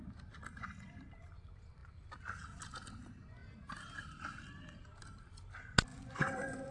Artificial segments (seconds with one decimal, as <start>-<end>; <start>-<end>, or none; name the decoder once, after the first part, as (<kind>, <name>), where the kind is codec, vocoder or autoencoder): 5.9-6.7 (vocoder, Vocos)